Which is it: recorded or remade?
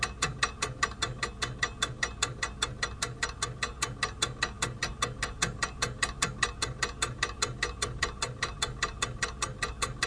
recorded